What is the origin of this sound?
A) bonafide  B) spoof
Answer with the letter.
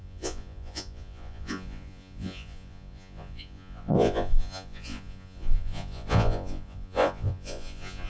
B